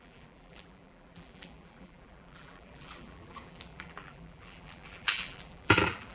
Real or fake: fake